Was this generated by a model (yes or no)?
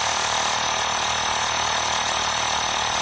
no